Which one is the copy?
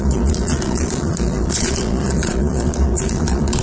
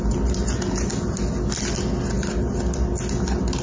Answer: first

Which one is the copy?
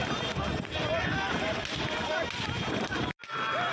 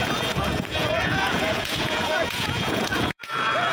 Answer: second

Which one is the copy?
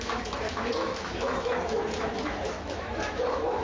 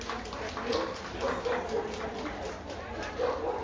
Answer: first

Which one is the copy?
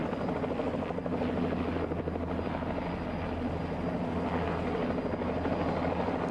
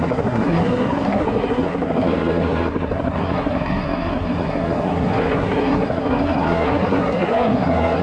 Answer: second